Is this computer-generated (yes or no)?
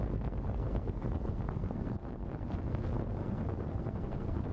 yes